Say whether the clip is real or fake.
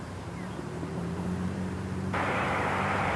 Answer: fake